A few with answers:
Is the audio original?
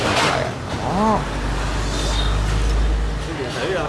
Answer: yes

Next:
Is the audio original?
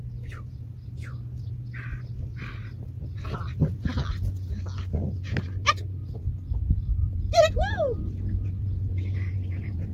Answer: yes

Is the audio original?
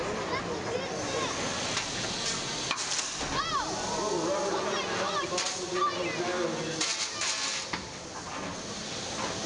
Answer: yes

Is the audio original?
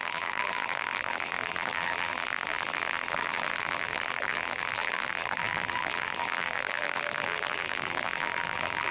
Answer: no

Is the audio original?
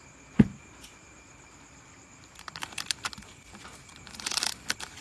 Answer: no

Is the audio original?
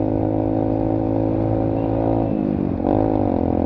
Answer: yes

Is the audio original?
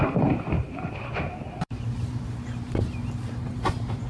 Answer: no